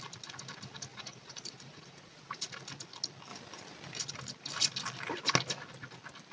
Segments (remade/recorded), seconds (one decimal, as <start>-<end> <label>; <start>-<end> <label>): 0.0-0.9 recorded; 0.9-2.5 remade; 2.5-6.3 recorded